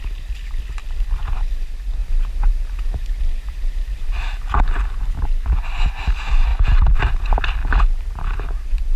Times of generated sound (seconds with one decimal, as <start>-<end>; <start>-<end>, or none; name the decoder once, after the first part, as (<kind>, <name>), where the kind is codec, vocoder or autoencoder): 2.0-4.6 (vocoder, BigVGAN v2); 7.6-8.3

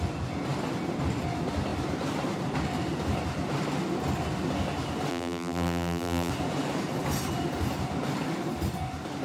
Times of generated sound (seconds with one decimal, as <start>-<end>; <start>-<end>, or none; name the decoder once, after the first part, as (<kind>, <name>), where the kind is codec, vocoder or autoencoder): 5.1-6.3 (vocoder, BigVGAN v2)

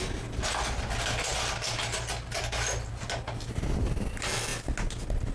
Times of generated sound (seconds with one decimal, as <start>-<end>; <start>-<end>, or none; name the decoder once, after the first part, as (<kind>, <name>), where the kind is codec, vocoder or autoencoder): none